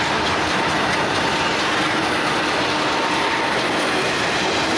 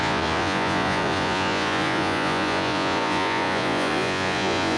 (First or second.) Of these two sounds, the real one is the first